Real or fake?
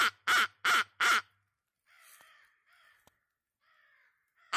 real